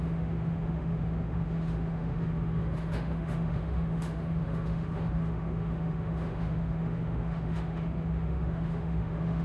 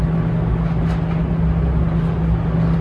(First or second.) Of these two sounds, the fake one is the first